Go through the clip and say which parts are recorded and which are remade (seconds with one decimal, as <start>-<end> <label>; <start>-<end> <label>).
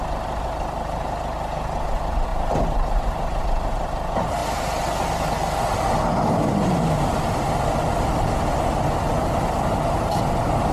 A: 0.0-10.7 recorded